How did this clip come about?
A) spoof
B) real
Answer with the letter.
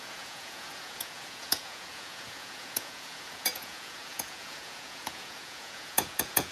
A